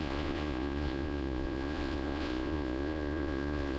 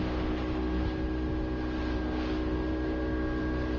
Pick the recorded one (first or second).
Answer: second